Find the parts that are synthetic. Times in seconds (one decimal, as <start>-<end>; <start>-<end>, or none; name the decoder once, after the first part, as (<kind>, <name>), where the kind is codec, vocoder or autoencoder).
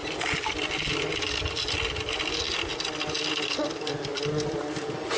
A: none